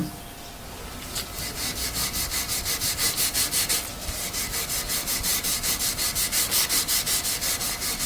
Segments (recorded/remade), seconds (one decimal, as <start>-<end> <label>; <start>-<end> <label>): 0.0-8.1 recorded